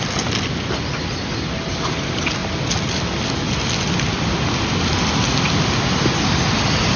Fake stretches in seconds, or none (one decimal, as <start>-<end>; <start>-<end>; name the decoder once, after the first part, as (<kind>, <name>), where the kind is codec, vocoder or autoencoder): none

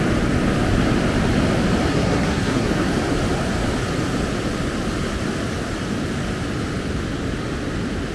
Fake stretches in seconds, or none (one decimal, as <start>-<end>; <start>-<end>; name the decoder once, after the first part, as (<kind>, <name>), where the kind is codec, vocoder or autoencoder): 1.9-2.9 (codec, SNAC)

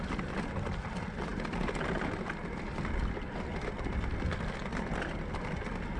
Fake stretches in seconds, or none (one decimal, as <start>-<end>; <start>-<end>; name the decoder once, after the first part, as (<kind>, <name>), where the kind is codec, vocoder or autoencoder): none

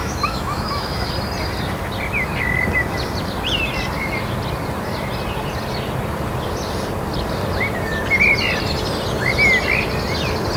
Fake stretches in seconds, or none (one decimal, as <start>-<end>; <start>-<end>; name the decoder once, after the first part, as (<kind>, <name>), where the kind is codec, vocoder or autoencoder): 0.0-1.1 (autoencoder, DAC-VAE)

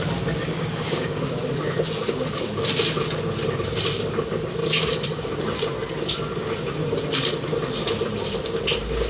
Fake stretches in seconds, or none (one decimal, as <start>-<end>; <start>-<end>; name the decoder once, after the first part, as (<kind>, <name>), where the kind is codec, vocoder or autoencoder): 0.4-1.2 (codec, DAC); 4.6-5.3